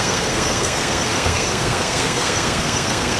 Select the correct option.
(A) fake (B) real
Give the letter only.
A